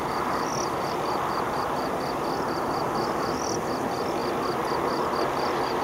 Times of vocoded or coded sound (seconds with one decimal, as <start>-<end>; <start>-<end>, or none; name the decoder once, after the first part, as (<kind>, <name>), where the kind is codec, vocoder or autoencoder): 0.0-4.2 (vocoder, BigVGAN v2)